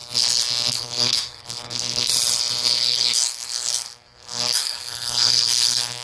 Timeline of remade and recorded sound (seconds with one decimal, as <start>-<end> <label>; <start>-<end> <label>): 0.0-0.7 recorded; 0.7-2.1 remade; 2.1-2.8 recorded; 2.8-6.0 remade